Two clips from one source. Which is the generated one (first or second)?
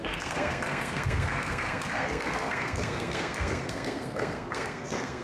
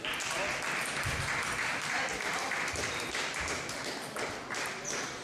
first